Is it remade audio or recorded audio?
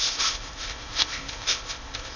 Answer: remade